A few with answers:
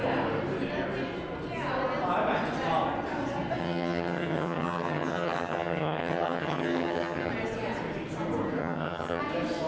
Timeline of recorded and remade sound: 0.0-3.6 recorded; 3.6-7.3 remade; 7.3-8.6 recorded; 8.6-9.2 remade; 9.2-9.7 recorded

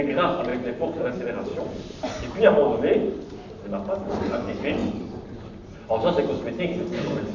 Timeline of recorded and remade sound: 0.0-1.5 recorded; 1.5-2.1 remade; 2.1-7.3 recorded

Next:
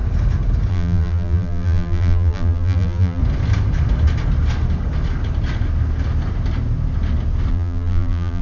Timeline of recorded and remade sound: 0.0-0.7 recorded; 0.7-3.2 remade; 3.2-7.5 recorded; 7.5-8.4 remade